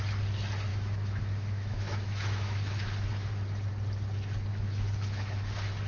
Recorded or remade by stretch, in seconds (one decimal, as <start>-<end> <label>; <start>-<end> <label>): 0.0-0.7 recorded; 0.7-3.3 remade; 3.3-4.5 recorded; 4.5-5.4 remade; 5.4-5.9 recorded